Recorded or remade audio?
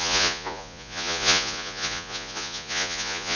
remade